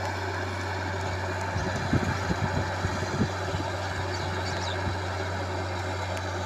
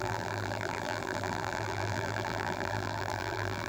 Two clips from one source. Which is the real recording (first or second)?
first